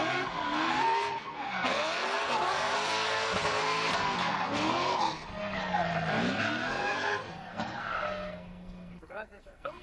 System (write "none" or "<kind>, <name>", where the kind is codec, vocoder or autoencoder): codec, SNAC